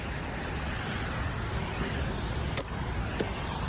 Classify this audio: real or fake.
real